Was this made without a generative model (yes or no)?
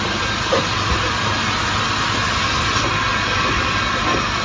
yes